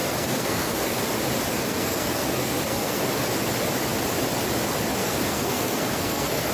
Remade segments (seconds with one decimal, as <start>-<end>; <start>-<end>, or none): 0.0-1.0; 1.5-3.0; 5.0-6.5